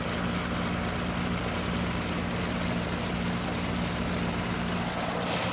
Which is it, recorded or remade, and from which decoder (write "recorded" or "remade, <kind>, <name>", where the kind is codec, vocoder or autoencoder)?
recorded